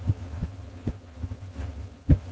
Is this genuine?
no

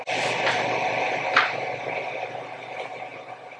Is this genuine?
no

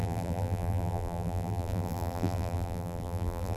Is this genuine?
no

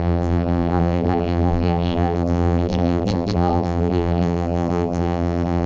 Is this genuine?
no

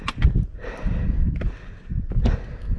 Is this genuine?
yes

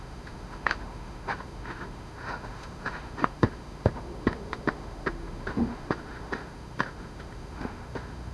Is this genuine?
no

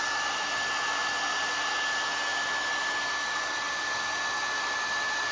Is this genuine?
yes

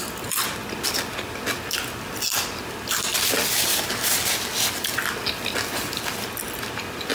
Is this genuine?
yes